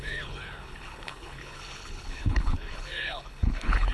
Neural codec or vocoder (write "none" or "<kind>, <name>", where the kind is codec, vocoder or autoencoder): codec, HILCodec